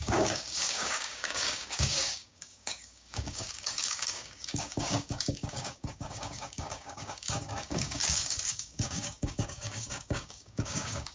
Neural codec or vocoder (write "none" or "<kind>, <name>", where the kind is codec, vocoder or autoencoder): codec, DAC